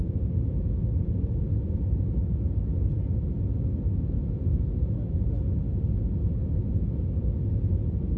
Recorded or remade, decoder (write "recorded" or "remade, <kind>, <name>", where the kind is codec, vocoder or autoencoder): recorded